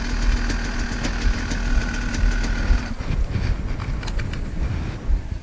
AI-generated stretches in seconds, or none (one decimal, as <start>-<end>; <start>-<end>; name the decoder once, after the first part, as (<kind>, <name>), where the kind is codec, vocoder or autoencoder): none

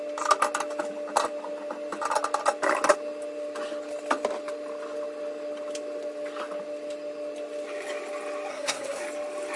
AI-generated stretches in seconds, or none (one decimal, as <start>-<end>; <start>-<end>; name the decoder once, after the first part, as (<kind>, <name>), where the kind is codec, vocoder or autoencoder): 8.5-9.0 (codec, SNAC)

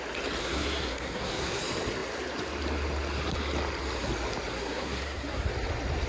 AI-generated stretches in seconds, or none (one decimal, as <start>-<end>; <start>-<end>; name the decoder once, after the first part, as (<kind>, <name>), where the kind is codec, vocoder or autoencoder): 0.4-1.6 (codec, SNAC); 4.5-5.5

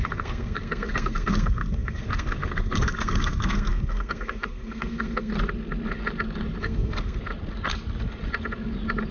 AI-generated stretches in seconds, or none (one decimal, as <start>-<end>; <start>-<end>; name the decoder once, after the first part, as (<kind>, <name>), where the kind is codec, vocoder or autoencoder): 0.0-5.3 (codec, SNAC); 6.6-7.2